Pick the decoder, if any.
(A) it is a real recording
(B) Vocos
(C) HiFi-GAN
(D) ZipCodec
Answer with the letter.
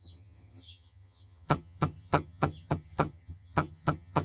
C